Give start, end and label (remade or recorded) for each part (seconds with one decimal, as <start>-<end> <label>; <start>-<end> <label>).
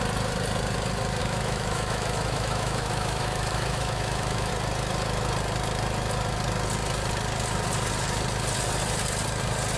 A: 0.0-1.2 recorded; 1.2-4.5 remade; 4.5-9.8 recorded